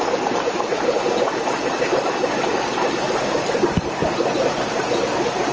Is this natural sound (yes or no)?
yes